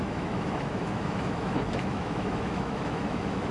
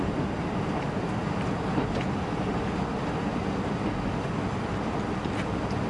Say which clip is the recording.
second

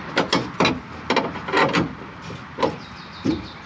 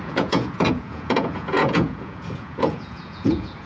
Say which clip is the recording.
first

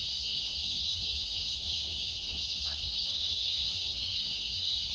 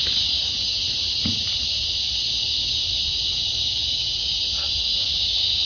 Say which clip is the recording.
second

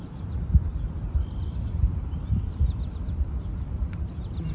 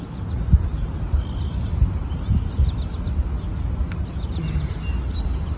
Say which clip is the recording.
second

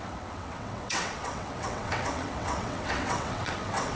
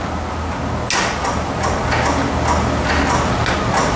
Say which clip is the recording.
second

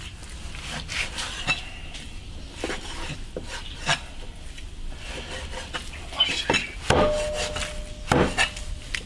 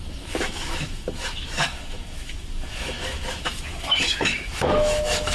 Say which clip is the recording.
first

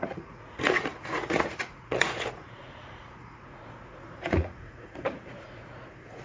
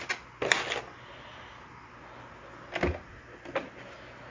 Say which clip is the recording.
second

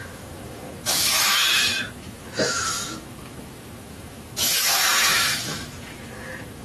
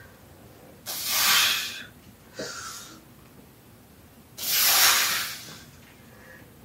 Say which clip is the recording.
second